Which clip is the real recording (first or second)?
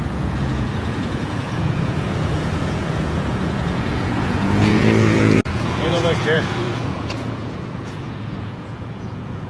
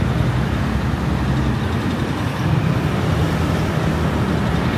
second